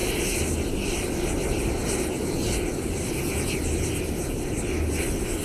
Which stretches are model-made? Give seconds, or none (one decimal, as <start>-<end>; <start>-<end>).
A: none